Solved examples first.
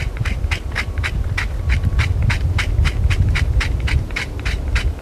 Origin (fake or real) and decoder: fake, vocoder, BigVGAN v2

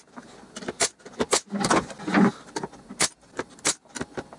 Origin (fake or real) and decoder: real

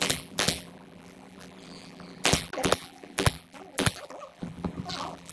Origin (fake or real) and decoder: fake, vocoder, BigVGAN v2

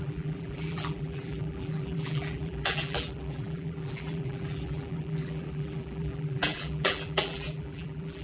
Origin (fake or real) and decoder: fake, vocoder, BigVGAN v2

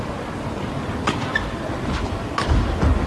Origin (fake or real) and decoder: real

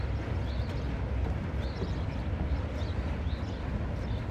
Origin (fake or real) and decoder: real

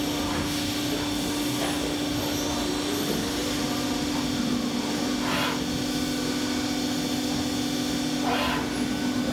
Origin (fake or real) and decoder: real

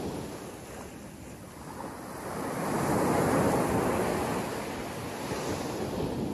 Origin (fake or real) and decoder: real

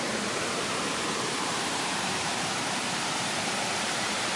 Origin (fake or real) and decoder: fake, vocoder, BigVGAN v2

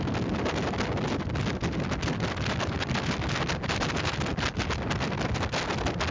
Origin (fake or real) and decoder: real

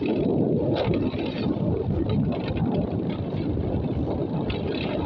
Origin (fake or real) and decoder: fake, vocoder, BigVGAN v2